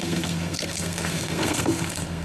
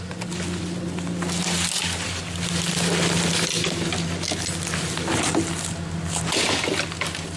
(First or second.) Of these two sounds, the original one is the second